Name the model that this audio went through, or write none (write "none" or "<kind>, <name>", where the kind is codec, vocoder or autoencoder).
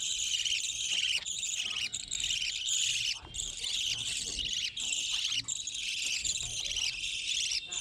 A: none